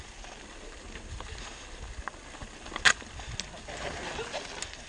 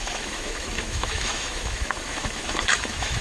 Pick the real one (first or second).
first